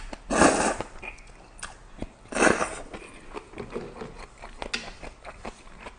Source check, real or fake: real